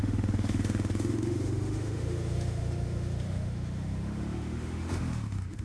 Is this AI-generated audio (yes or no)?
yes